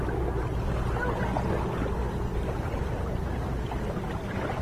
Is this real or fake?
real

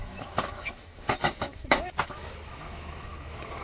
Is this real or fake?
fake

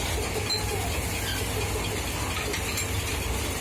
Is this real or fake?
real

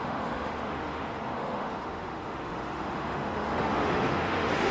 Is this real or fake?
fake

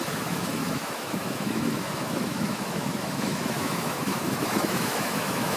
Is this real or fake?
fake